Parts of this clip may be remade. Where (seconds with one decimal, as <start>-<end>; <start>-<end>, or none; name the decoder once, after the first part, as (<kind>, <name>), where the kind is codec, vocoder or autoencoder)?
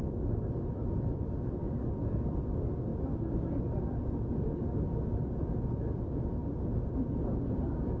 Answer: none